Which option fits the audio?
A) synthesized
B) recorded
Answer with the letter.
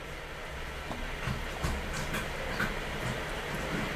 B